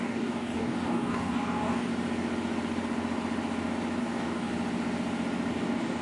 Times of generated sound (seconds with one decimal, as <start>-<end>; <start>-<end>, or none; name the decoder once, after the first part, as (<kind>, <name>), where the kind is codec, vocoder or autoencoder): 0.0-1.9 (codec, DAC); 4.0-4.5; 5.5-6.0